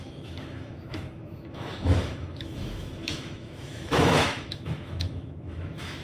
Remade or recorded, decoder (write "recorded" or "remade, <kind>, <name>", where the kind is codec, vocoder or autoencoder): remade, autoencoder, DAC-VAE